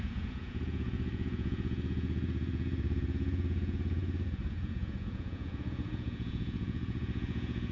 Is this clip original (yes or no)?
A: no